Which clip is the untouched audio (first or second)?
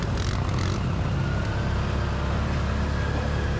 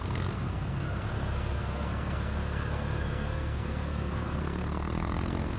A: first